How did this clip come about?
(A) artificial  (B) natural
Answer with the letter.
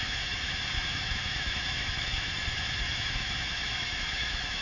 A